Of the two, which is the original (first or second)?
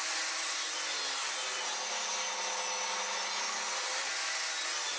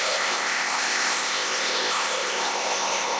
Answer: first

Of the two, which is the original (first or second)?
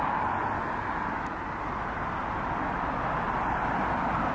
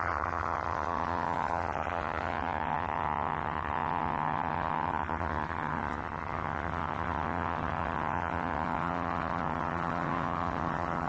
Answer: first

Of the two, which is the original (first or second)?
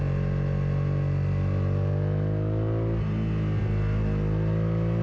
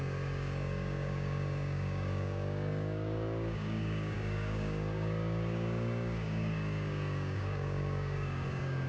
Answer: first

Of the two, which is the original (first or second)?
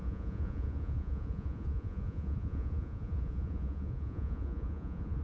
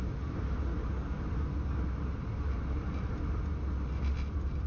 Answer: second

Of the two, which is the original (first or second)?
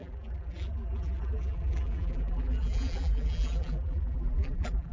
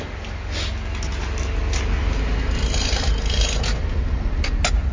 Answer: second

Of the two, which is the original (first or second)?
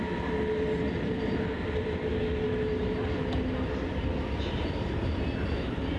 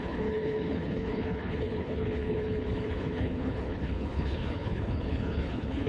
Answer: first